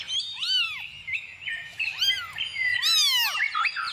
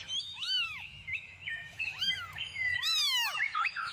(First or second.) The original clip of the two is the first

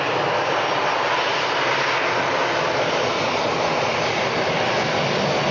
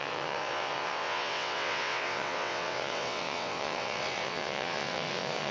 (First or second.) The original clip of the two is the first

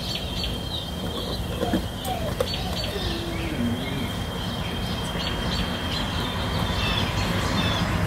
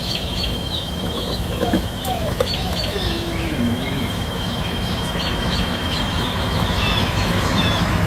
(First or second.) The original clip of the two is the first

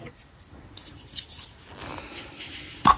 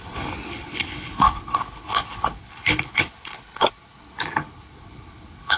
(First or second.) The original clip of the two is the first